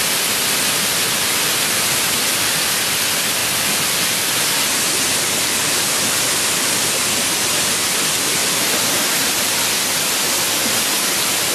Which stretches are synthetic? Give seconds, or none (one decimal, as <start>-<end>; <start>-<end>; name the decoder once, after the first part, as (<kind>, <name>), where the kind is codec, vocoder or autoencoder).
none